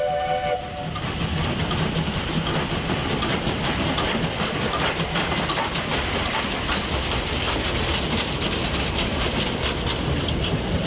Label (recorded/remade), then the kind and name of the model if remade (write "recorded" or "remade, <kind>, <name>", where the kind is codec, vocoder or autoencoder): recorded